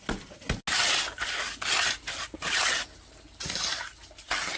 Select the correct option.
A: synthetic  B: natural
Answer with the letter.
B